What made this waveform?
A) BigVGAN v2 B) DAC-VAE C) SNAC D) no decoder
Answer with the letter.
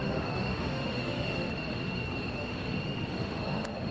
B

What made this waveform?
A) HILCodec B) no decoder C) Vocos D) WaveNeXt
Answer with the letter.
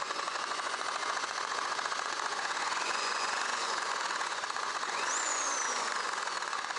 C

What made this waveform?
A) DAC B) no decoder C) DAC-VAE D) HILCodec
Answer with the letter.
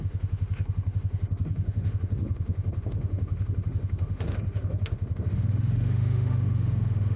C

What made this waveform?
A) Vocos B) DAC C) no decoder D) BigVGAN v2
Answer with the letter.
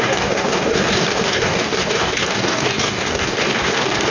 B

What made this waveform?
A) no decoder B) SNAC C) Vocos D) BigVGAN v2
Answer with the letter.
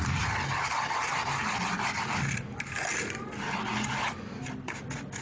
A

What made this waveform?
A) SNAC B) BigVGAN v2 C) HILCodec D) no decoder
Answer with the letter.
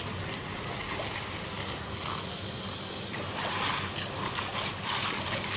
D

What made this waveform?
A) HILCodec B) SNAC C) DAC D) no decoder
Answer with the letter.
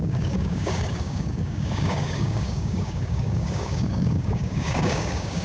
C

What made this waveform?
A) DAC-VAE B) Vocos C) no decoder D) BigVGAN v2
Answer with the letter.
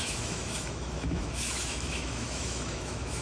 A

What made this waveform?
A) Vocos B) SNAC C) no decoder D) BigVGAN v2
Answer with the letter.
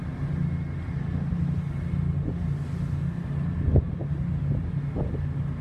C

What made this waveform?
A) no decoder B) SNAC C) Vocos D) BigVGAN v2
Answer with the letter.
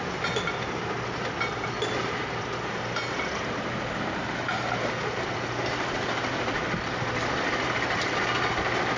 A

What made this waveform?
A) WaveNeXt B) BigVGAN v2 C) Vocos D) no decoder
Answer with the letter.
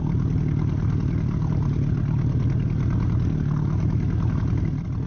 D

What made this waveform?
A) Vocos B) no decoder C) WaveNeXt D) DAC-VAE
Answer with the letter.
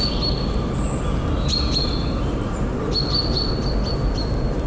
B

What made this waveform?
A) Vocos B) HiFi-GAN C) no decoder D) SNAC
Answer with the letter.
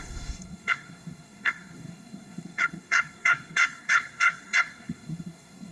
D